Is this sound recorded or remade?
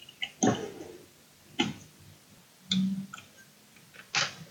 recorded